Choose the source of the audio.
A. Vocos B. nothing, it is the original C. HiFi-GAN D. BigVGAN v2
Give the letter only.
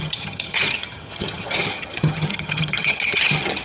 C